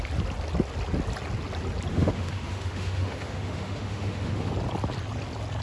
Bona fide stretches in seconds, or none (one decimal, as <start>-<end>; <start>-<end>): 0.0-1.9; 4.5-5.6

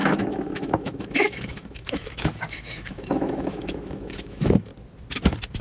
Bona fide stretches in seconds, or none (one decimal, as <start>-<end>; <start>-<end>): 4.7-5.6